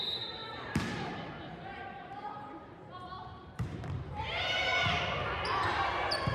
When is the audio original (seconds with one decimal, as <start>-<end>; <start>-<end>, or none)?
4.7-5.7